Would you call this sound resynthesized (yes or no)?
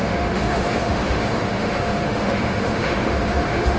yes